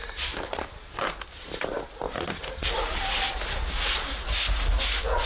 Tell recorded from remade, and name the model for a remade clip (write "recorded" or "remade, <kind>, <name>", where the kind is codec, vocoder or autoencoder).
recorded